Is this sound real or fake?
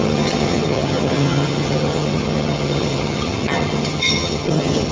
fake